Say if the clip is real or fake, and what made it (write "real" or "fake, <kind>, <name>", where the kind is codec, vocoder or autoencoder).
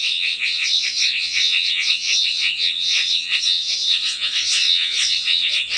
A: fake, vocoder, WaveNeXt